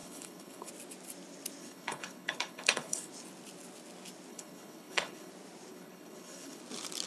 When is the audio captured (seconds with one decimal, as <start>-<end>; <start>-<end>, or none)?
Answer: 0.7-1.6; 3.1-4.3; 5.3-5.7; 6.6-7.1